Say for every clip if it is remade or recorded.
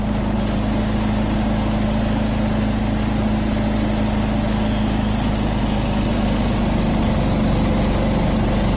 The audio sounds recorded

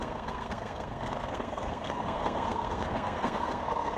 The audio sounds remade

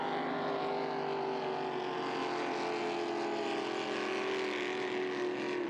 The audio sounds recorded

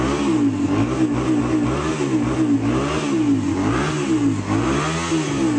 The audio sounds recorded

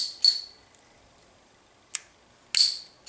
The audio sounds recorded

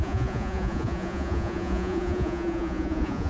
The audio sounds remade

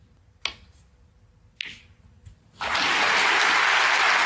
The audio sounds recorded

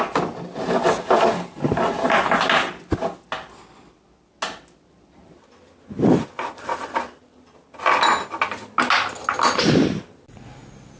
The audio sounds recorded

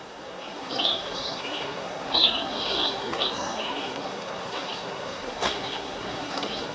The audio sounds remade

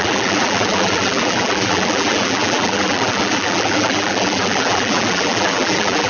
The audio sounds remade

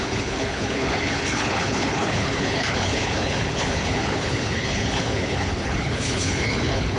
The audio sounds remade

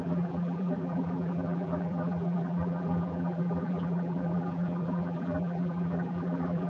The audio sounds remade